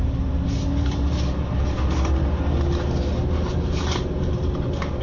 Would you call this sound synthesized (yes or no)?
no